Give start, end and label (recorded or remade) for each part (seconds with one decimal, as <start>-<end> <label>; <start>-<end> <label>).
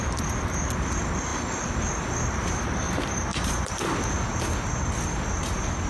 0.0-1.3 recorded; 1.3-1.8 remade; 1.8-3.3 recorded; 3.3-3.9 remade; 3.9-5.9 recorded